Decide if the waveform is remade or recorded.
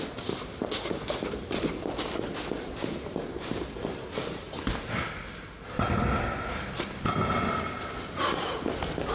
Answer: recorded